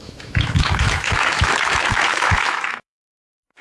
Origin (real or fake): fake